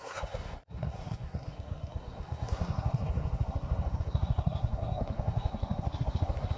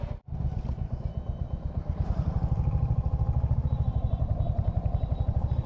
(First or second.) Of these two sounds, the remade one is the first